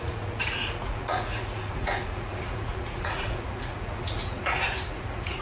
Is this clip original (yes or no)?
no